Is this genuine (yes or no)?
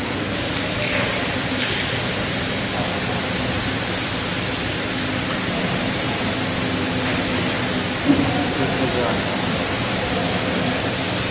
yes